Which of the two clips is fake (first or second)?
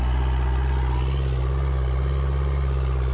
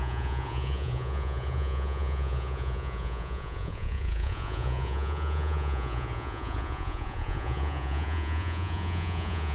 second